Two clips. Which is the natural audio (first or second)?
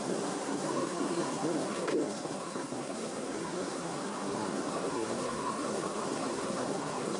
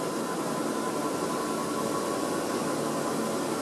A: second